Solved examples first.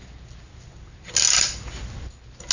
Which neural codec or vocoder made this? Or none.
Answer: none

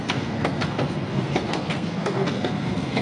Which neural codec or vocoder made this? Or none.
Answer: codec, SNAC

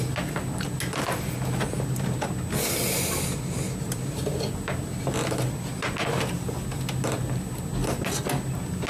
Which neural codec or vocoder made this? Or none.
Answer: none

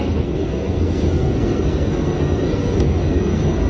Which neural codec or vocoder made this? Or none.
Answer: codec, SNAC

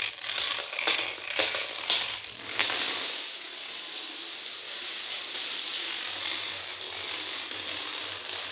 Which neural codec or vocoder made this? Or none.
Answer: none